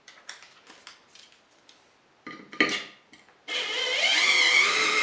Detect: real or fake real